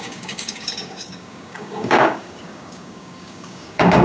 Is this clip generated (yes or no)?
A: yes